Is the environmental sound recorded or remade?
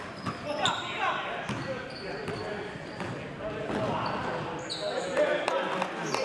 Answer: recorded